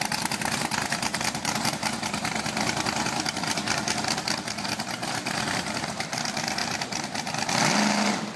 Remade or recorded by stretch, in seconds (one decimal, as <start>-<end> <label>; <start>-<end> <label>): 0.0-2.2 remade; 2.2-4.9 recorded; 4.9-6.6 remade; 6.6-8.4 recorded